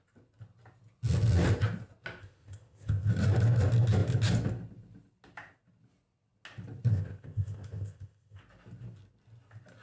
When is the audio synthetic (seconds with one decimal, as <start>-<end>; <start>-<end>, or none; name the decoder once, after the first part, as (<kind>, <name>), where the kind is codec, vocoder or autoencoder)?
2.2-3.1 (codec, ZipCodec); 6.9-8.4